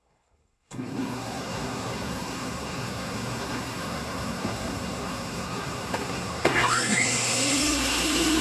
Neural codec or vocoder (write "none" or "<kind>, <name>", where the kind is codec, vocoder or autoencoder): codec, SNAC